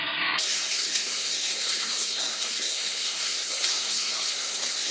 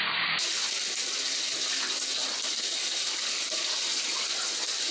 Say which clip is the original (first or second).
second